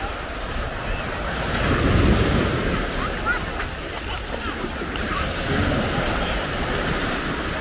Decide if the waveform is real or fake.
real